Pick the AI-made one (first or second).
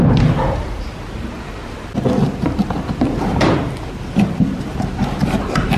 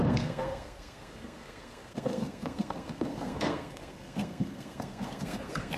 second